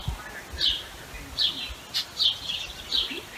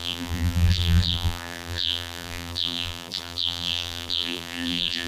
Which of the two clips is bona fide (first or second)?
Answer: first